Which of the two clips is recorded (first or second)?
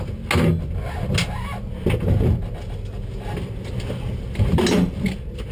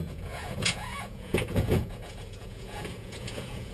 first